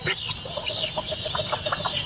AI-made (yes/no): no